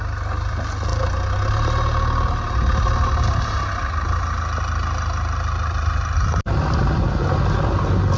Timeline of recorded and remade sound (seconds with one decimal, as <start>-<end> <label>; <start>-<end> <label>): 0.0-8.2 recorded